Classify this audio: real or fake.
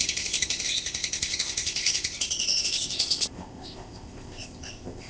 fake